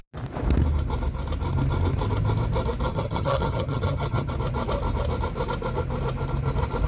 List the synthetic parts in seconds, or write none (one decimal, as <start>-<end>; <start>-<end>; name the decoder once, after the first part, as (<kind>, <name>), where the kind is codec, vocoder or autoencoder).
2.9-4.3 (vocoder, HiFi-GAN)